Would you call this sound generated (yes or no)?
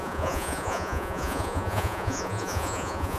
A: yes